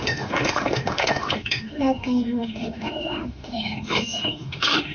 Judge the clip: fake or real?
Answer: fake